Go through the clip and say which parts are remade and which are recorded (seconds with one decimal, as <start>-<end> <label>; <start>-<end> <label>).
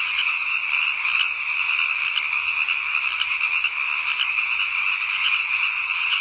0.0-0.6 remade; 0.6-4.3 recorded; 4.3-6.2 remade